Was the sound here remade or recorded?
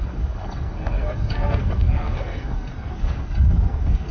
remade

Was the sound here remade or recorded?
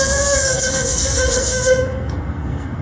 remade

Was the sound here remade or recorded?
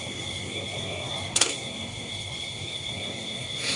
remade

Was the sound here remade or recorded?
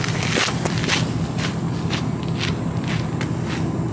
recorded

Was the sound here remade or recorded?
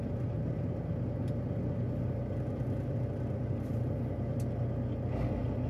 recorded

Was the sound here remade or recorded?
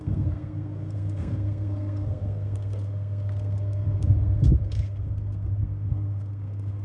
remade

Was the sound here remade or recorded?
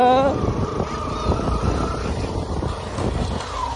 recorded